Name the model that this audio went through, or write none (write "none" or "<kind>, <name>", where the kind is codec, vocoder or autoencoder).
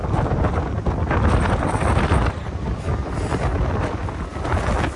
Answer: none